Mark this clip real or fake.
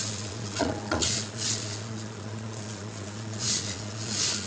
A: fake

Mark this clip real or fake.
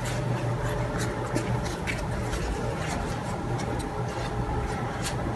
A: real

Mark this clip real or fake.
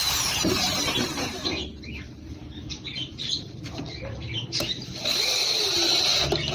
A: fake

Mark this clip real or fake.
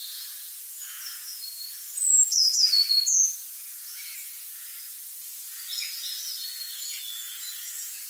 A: fake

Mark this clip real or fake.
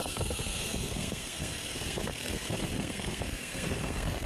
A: fake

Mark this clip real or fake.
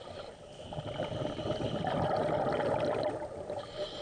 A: real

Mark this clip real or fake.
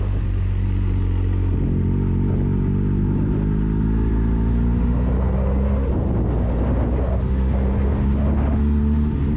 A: real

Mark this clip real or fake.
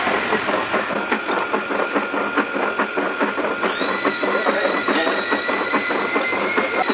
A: real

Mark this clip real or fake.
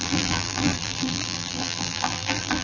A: fake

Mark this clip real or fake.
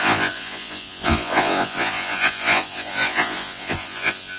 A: fake